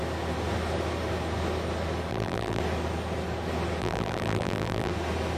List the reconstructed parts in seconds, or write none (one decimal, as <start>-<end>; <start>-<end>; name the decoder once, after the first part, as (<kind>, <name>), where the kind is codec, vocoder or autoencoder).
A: 2.1-2.6 (vocoder, BigVGAN v2); 3.8-4.9